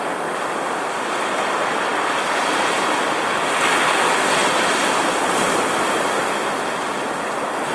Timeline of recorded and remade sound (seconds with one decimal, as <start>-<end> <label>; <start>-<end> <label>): 0.0-7.7 recorded

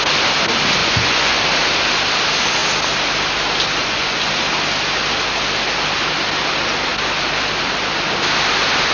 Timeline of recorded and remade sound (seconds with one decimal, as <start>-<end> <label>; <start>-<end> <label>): 0.0-0.8 recorded; 0.8-1.4 remade; 1.4-3.8 recorded; 3.8-4.3 remade; 4.3-8.9 recorded